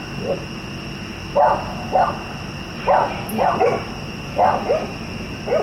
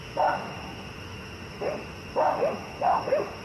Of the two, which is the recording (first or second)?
first